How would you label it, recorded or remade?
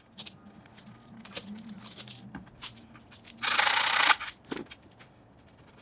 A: recorded